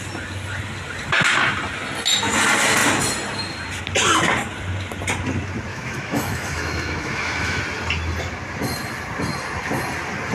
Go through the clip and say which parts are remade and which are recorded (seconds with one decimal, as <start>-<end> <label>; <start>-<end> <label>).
0.0-5.7 recorded; 5.7-7.6 remade; 7.6-10.3 recorded